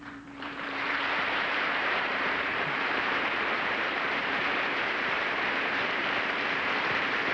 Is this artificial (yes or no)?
yes